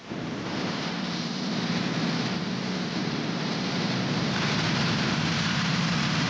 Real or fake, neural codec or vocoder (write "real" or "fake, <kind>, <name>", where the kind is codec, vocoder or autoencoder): fake, vocoder, BigVGAN v2